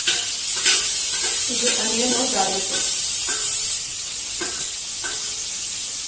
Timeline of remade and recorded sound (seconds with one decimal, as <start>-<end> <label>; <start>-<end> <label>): 0.0-0.8 recorded; 0.8-2.6 remade; 2.6-5.2 recorded; 5.2-6.1 remade